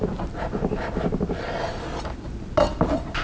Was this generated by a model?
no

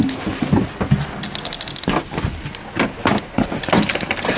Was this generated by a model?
no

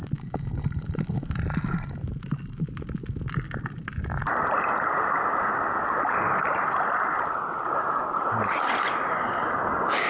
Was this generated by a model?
no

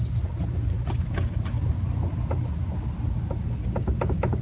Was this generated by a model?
no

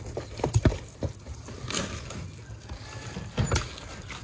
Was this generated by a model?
no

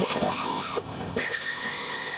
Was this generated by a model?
yes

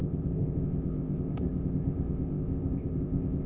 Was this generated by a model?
yes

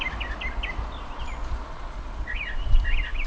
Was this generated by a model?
no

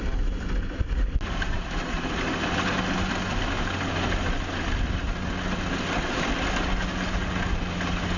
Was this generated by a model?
no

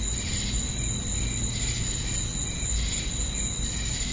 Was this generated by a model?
no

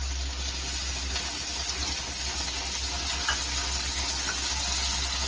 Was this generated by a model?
no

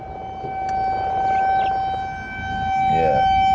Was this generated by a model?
no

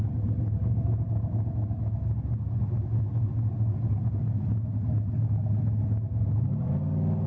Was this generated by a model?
no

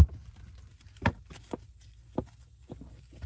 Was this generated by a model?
no